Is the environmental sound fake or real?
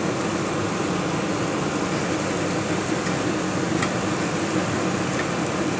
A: real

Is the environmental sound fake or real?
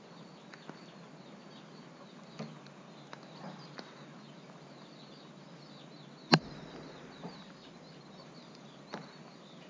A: real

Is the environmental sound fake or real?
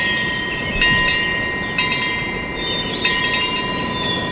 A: real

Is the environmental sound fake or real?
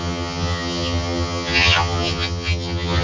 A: fake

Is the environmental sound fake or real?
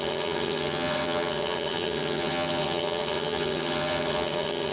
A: fake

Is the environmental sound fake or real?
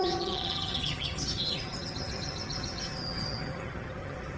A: fake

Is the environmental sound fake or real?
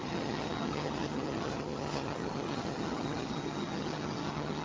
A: fake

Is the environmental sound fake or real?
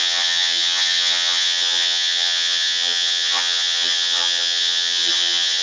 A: fake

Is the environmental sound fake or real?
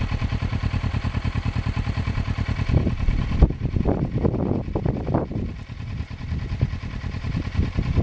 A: real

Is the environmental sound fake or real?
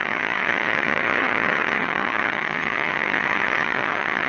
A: fake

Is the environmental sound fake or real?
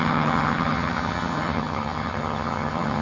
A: fake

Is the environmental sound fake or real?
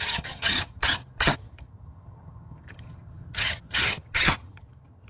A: fake